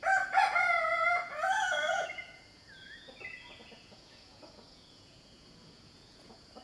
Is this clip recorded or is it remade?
remade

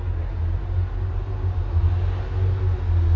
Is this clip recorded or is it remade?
recorded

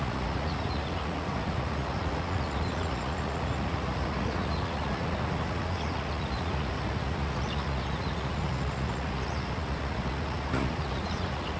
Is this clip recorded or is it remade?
remade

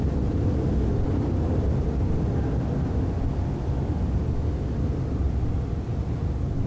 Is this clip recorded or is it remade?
recorded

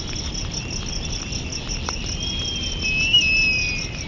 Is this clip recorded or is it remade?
recorded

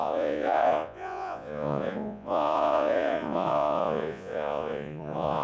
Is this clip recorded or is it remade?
remade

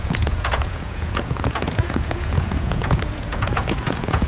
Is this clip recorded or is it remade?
remade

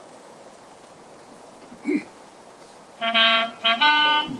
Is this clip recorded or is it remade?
remade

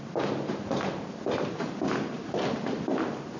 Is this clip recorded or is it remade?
recorded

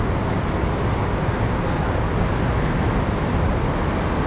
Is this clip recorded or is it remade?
recorded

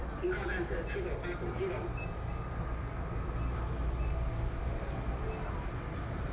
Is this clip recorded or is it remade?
recorded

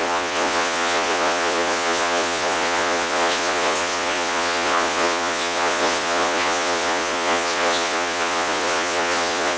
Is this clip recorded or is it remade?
remade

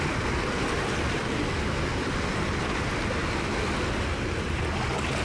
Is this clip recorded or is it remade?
recorded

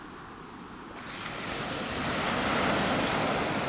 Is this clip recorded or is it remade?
recorded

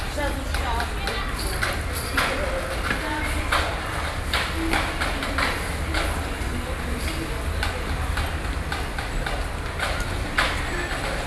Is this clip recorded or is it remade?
recorded